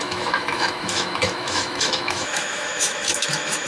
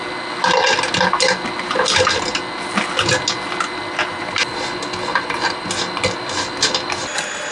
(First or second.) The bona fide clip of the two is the second